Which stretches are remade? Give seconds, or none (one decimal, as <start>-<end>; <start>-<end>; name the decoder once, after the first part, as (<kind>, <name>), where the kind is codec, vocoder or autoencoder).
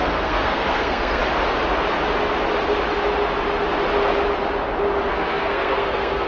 0.0-1.2 (codec, SNAC); 5.0-6.3